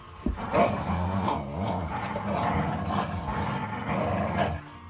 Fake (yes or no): no